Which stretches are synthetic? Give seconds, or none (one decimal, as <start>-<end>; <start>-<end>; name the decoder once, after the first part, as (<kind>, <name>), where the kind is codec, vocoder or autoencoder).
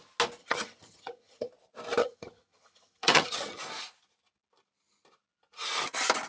0.4-1.5 (vocoder, HiFi-GAN); 2.0-3.6